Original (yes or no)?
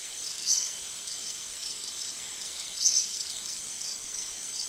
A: no